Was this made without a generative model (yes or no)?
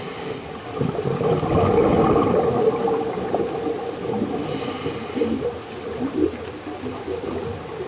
yes